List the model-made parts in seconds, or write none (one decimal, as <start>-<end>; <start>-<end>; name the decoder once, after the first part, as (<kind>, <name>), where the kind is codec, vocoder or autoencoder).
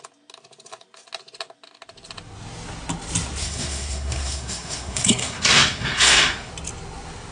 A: 3.4-6.5 (codec, SNAC)